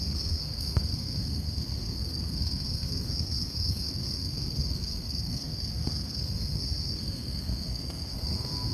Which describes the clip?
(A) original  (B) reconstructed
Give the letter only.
B